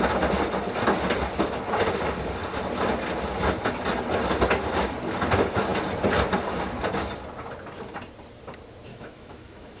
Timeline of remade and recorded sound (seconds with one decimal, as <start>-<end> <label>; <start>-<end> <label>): 0.0-8.9 recorded; 8.9-9.8 remade